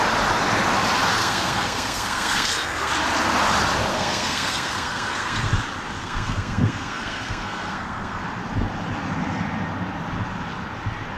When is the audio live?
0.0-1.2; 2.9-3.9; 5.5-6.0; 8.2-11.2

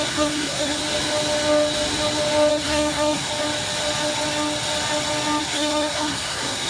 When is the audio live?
0.8-2.5; 3.3-5.4